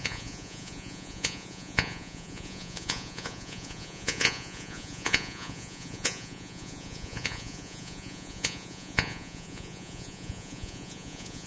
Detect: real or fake fake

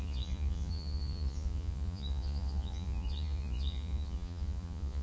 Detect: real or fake fake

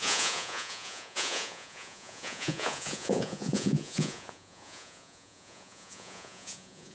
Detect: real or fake fake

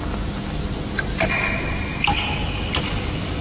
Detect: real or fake real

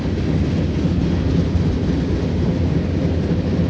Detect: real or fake real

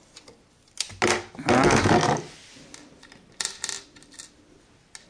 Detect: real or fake real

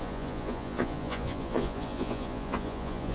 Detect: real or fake fake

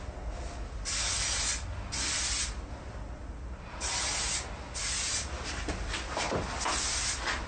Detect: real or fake real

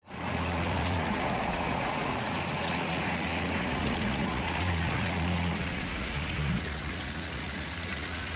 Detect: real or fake fake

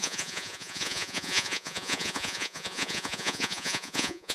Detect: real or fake fake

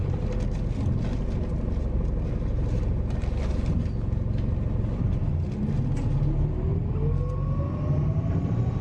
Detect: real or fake real